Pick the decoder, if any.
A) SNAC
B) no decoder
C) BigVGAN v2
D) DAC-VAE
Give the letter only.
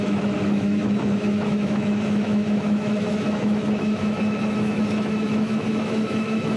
D